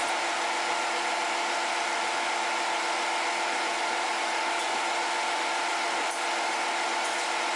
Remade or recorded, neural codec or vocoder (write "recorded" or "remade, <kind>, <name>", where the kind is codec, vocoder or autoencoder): recorded